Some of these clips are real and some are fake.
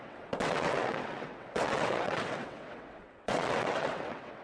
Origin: fake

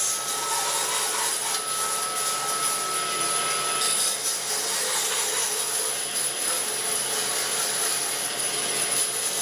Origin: real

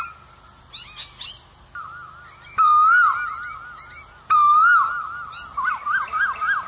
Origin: real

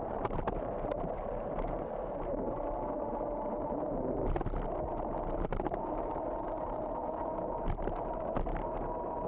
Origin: fake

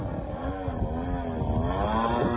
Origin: real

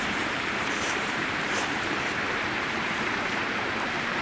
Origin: fake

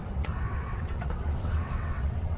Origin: fake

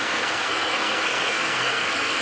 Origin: fake